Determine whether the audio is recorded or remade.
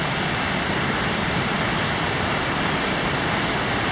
recorded